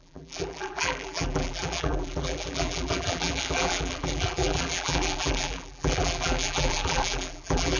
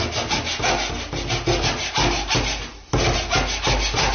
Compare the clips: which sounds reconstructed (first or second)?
first